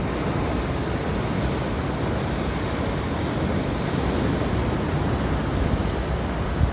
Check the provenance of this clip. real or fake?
real